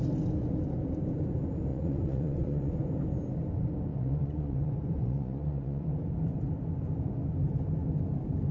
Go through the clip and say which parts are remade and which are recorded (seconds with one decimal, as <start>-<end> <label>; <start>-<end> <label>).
0.0-1.7 recorded; 1.7-2.7 remade; 2.7-3.9 recorded; 3.9-5.9 remade; 5.9-8.5 recorded